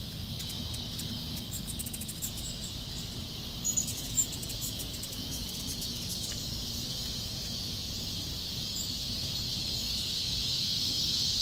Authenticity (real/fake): fake